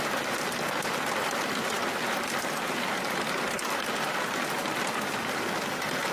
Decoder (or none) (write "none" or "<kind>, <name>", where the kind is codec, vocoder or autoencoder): none